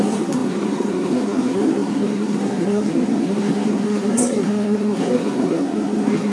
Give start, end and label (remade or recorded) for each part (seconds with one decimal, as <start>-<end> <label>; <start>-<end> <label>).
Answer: 0.0-6.3 remade